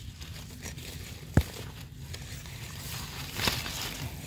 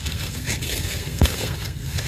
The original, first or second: first